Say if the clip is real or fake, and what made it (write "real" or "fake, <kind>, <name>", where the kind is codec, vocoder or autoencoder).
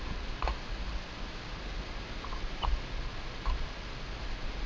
real